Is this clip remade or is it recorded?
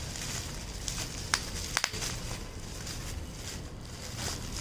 recorded